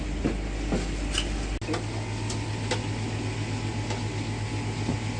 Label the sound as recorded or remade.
recorded